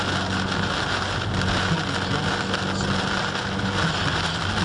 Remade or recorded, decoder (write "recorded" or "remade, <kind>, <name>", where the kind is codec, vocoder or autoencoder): recorded